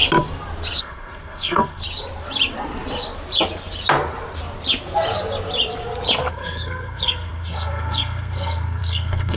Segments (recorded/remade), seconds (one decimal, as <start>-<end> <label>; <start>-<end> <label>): 0.0-0.8 recorded; 0.8-1.8 remade; 1.8-6.3 recorded; 6.3-9.4 remade